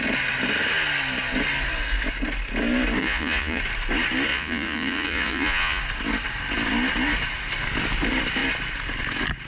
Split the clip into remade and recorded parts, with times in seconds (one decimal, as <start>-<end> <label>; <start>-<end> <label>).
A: 0.0-3.0 recorded; 3.0-3.6 remade; 3.6-4.3 recorded; 4.3-5.8 remade; 5.8-9.5 recorded